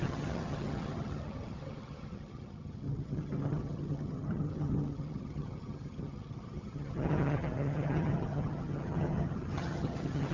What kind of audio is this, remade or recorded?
remade